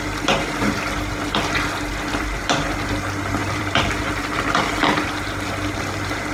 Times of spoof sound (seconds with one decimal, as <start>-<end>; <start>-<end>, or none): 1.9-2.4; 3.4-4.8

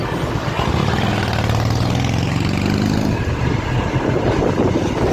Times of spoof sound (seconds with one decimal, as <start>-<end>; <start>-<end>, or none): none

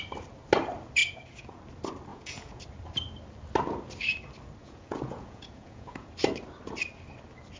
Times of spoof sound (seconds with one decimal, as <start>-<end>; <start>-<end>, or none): 1.0-1.6; 2.1-2.6; 4.6-6.1

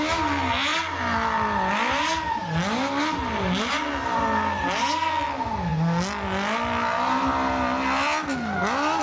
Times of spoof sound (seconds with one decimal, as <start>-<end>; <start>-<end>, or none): none

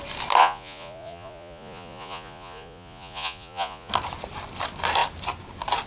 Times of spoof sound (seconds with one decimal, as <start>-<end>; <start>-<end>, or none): 0.4-3.9

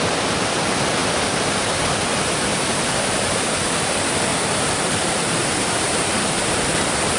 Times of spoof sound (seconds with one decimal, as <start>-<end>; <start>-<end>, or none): 2.5-3.0; 4.3-6.7